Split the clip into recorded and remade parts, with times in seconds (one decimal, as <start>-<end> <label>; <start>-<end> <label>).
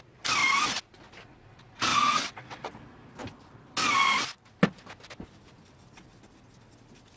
0.0-1.9 recorded; 1.9-2.7 remade; 2.7-7.2 recorded